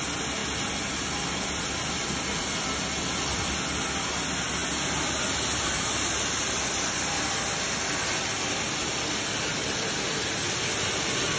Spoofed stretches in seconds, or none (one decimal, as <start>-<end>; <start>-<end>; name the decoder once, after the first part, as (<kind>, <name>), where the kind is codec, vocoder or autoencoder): none